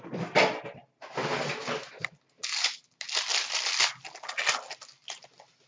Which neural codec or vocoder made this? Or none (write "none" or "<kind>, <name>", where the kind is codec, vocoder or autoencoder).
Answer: none